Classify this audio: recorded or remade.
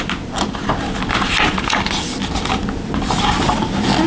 recorded